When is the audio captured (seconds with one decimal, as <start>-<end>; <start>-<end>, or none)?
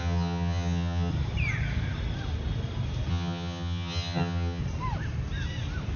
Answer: 1.1-3.1; 4.6-6.0